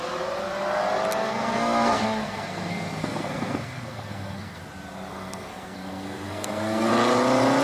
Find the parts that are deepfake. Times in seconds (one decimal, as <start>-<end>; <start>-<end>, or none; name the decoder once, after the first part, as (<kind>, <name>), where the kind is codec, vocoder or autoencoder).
1.2-4.6 (codec, SNAC); 5.1-6.9